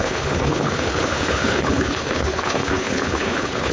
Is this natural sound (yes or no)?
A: no